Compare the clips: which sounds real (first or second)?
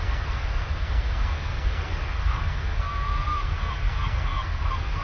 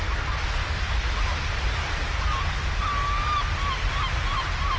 second